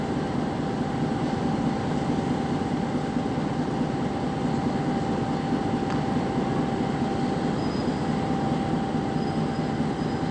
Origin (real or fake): real